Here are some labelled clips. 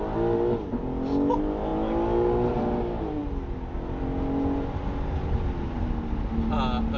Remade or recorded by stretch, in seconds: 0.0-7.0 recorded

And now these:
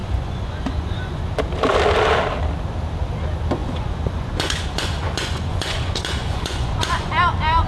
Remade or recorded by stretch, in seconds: 0.0-1.2 remade; 1.2-3.6 recorded; 3.6-7.1 remade; 7.1-7.7 recorded

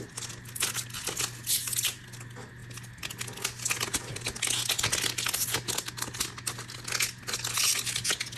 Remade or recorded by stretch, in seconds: 0.0-8.4 recorded

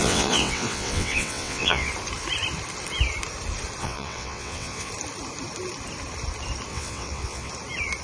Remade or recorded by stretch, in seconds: 0.0-1.9 remade; 1.9-3.8 recorded; 3.8-4.9 remade; 4.9-6.7 recorded; 6.7-7.5 remade; 7.5-8.0 recorded

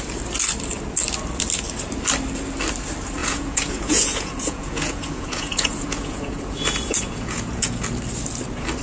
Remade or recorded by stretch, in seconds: 0.0-3.2 recorded; 3.2-7.8 remade; 7.8-8.8 recorded

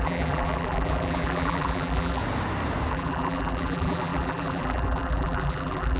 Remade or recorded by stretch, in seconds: 0.0-2.2 remade; 2.2-2.9 recorded; 2.9-6.0 remade